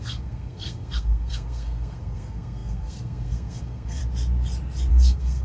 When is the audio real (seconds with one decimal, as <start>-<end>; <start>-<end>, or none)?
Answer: 4.0-4.9